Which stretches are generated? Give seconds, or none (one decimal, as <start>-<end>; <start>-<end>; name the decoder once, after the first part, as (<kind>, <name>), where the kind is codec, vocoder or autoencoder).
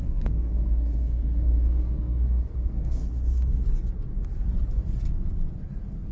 0.0-3.1 (codec, SNAC)